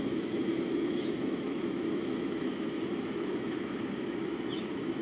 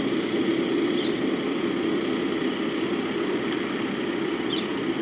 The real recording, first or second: second